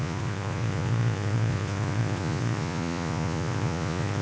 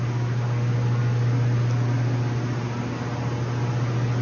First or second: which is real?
second